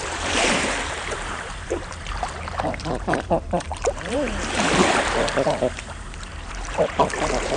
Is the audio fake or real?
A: fake